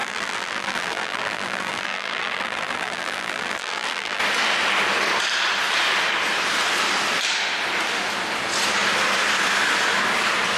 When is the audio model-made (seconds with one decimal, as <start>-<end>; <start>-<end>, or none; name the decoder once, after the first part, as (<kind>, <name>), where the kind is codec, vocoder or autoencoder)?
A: 0.0-4.2 (vocoder, BigVGAN v2)